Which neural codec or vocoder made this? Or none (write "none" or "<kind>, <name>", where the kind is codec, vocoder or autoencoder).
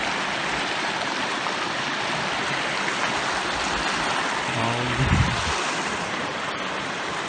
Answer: none